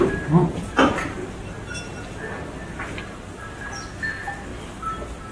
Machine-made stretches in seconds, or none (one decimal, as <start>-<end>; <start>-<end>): none